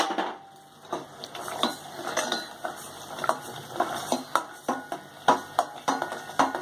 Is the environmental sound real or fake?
real